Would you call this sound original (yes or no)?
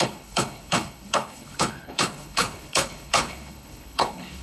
no